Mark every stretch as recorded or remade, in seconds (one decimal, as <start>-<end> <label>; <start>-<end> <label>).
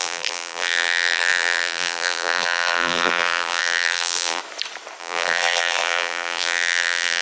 0.0-4.4 remade; 4.4-5.0 recorded; 5.0-7.2 remade